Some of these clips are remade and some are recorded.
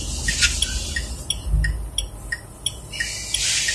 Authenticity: recorded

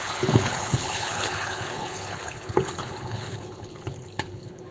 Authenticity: remade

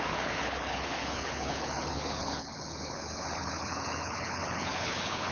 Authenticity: remade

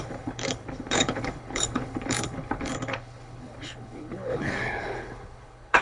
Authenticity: remade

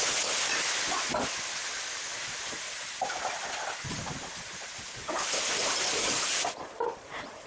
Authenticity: recorded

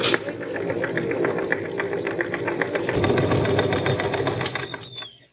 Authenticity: recorded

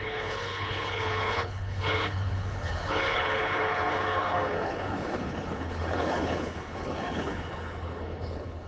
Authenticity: remade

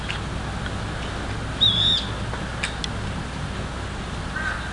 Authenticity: recorded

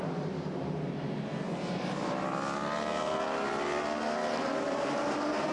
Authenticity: recorded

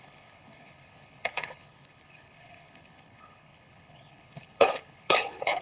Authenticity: remade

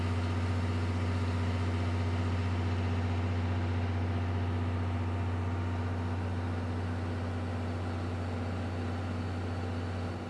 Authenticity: recorded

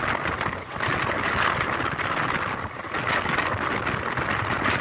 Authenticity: recorded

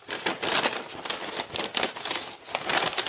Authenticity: recorded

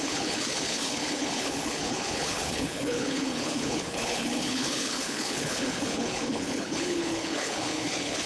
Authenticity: remade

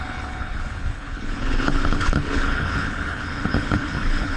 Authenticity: remade